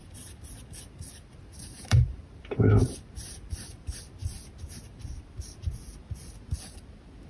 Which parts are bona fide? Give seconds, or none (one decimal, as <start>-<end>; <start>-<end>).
4.2-4.7; 6.0-7.3